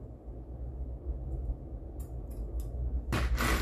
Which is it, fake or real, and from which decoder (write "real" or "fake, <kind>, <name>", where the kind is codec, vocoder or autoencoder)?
real